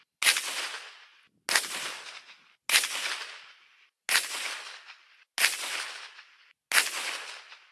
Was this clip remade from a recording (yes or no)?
no